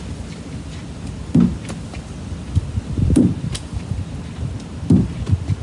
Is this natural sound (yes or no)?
no